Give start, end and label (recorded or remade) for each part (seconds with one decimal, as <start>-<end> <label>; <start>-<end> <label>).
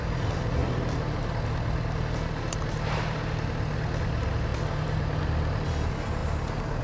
0.0-6.8 recorded